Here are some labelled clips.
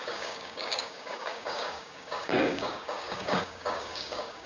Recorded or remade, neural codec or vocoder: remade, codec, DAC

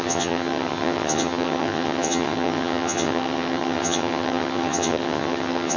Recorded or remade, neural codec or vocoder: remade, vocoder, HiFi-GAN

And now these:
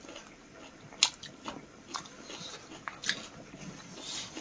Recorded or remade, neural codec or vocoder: recorded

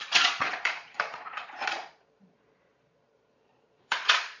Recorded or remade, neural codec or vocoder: remade, vocoder, Vocos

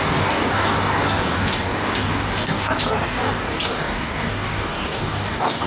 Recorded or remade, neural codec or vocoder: remade, codec, DAC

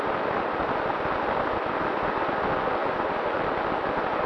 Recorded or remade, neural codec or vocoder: recorded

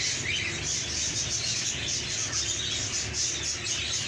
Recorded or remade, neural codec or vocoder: recorded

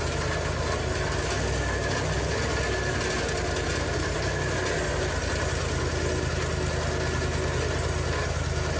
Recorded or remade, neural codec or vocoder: recorded